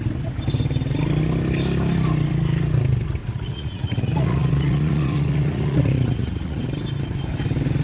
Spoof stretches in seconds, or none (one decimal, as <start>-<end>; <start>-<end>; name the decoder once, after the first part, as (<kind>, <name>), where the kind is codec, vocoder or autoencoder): 3.2-6.6 (vocoder, Vocos)